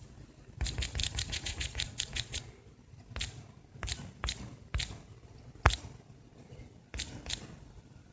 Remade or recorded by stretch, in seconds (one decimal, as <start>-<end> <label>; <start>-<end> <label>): 0.0-1.0 recorded; 1.0-2.4 remade; 2.4-8.1 recorded